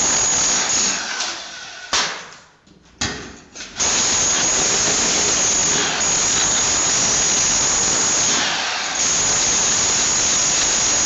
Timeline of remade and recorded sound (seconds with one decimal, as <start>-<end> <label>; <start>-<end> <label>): 0.0-11.1 recorded